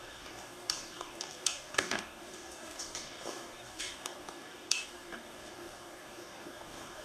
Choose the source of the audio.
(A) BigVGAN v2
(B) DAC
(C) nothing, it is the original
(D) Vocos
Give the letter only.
B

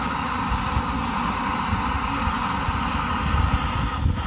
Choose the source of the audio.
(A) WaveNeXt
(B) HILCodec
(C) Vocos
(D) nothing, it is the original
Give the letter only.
D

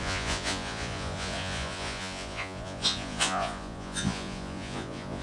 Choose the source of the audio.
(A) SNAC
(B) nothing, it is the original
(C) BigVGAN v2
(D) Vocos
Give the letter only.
D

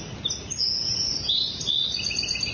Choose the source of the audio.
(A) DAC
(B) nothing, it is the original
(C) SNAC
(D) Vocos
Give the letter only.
B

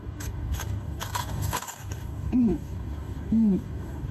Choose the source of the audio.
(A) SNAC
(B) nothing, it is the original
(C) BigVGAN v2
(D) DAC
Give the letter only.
D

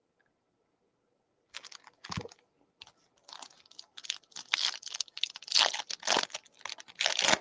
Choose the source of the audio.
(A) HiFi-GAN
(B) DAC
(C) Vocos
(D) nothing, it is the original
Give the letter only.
D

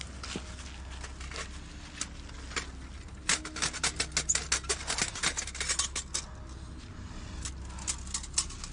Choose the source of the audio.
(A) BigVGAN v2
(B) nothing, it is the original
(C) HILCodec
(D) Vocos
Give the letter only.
B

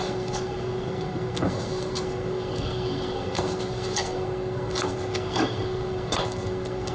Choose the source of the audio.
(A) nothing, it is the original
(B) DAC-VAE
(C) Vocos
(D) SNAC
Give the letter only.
D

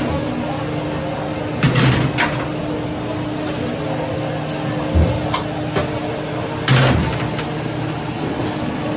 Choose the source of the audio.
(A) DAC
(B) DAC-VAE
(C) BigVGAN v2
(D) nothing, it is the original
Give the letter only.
D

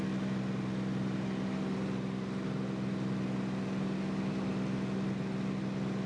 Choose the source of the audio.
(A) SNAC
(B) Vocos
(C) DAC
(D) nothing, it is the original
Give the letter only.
D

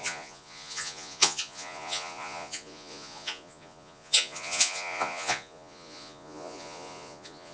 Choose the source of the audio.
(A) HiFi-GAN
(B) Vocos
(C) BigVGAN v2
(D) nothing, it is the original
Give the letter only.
B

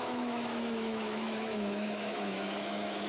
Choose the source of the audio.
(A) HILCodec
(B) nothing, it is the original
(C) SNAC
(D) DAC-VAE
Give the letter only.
D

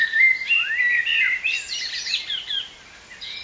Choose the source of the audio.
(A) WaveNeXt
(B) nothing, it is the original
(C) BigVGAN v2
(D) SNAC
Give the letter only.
B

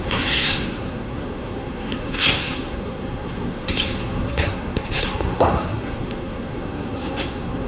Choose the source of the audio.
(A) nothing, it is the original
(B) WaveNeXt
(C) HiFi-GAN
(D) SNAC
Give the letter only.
D